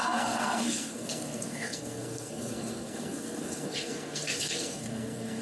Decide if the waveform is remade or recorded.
remade